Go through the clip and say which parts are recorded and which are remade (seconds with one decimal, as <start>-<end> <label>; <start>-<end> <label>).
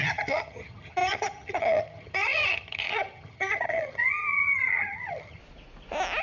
0.0-5.4 remade; 5.4-6.2 recorded